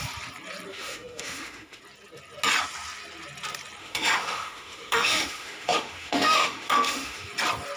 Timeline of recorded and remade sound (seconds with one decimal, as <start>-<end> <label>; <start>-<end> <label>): 0.0-0.7 recorded; 0.7-1.8 remade; 1.8-3.8 recorded; 3.8-7.3 remade; 7.3-7.8 recorded